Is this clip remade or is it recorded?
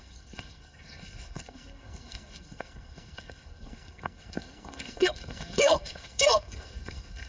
remade